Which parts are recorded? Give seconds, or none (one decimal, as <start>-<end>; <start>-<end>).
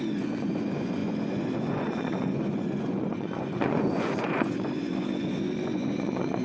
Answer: none